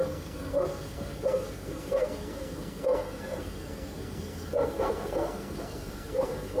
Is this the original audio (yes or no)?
no